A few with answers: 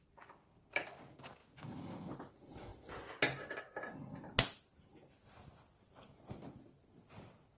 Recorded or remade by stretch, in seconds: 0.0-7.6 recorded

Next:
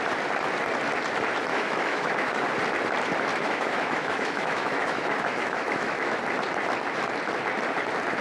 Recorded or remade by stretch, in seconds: 0.0-1.5 recorded; 1.5-2.4 remade; 2.4-3.3 recorded; 3.3-6.2 remade; 6.2-8.2 recorded